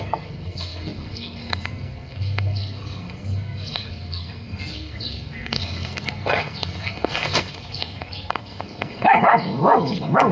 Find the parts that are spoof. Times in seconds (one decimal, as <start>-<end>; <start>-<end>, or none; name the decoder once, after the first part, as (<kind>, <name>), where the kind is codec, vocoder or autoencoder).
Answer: 0.0-10.3 (codec, SNAC)